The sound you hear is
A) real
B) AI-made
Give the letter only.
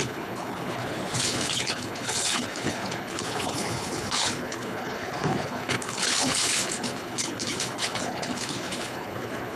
B